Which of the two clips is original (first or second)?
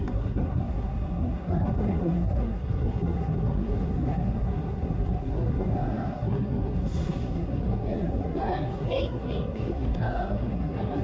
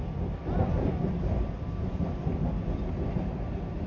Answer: second